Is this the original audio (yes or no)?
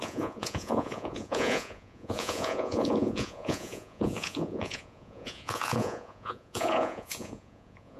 no